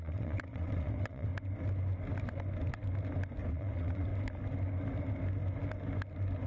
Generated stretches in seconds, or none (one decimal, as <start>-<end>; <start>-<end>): 0.0-1.3; 3.5-4.1